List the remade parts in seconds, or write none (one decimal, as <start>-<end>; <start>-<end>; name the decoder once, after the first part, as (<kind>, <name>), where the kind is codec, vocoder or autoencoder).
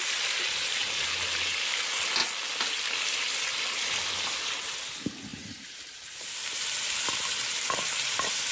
5.3-8.5 (vocoder, BigVGAN v2)